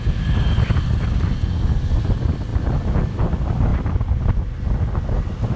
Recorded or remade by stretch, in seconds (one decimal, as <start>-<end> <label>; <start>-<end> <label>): 0.0-3.7 recorded; 3.7-4.6 remade; 4.6-5.6 recorded